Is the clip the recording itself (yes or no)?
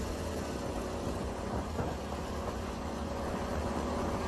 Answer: no